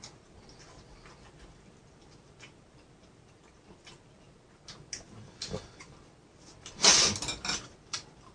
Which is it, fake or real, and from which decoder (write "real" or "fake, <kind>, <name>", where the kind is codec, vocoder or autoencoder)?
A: real